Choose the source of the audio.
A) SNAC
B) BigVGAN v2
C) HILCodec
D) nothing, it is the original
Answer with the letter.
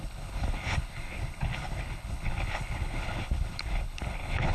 C